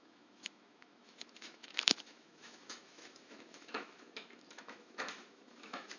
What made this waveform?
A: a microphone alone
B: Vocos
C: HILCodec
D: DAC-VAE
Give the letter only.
D